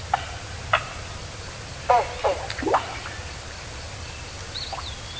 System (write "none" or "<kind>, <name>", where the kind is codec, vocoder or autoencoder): none